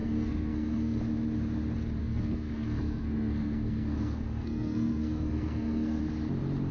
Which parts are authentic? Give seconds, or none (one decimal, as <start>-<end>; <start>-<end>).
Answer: 1.0-2.0; 6.0-6.7